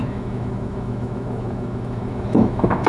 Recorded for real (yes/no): no